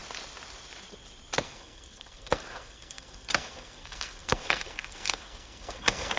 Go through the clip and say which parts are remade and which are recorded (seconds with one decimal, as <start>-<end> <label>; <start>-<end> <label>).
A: 0.0-1.4 recorded; 1.4-6.2 remade